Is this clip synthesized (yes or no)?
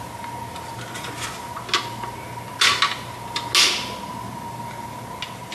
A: no